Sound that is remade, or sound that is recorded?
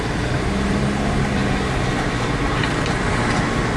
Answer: recorded